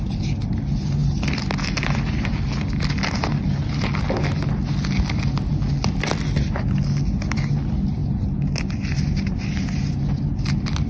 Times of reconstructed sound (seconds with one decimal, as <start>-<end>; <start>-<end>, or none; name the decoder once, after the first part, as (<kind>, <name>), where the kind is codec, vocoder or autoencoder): none